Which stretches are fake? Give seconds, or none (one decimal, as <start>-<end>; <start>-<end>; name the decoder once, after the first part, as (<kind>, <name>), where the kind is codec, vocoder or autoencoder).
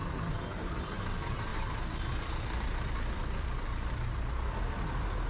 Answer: 0.0-1.0 (vocoder, BigVGAN v2); 1.5-4.3